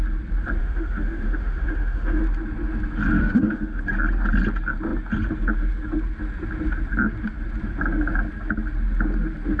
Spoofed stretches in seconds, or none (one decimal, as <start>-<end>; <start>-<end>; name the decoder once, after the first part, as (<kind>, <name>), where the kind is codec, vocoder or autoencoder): 0.6-2.2 (autoencoder, DAC-VAE); 3.2-3.8